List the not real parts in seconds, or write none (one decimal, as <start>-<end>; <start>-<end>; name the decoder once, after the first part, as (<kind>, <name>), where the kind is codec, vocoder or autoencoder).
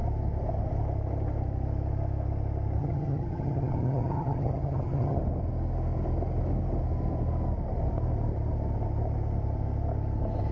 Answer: 2.8-5.2 (vocoder, HiFi-GAN)